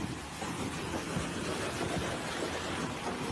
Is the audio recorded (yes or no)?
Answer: yes